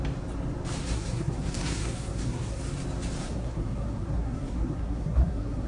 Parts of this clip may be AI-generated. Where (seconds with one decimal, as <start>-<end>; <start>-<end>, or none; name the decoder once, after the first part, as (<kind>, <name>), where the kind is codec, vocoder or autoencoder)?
0.8-2.6 (codec, SNAC); 3.2-5.7